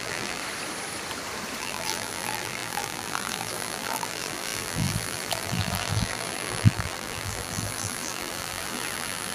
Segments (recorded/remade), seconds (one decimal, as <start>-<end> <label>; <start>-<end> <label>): 0.0-0.4 remade; 0.4-1.6 recorded; 1.6-9.3 remade